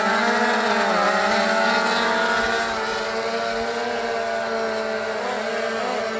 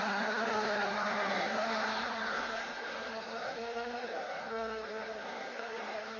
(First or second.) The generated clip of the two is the second